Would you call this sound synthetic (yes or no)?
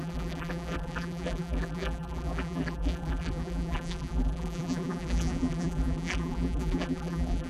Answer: yes